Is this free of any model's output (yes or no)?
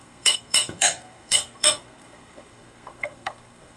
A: no